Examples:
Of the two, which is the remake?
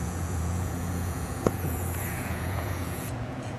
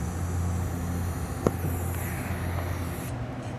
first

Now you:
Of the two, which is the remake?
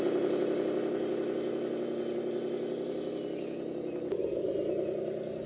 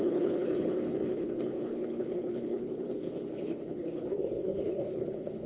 second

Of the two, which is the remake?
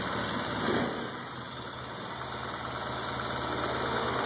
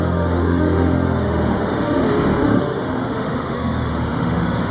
second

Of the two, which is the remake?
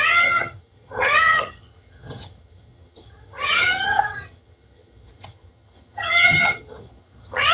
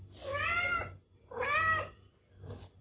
first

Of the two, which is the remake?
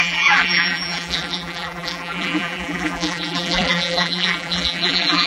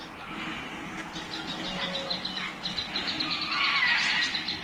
first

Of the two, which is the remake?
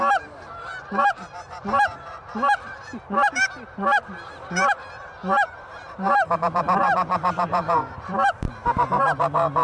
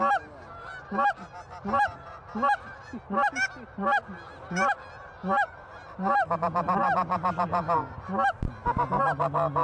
first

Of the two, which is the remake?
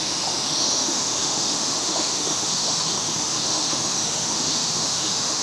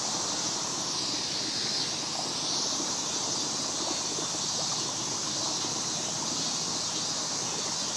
first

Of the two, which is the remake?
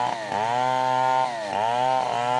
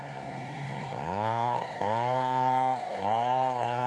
second